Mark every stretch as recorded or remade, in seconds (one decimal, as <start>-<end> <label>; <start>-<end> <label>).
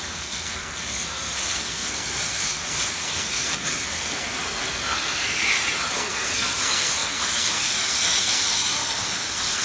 0.0-5.4 remade; 5.4-5.9 recorded; 5.9-9.6 remade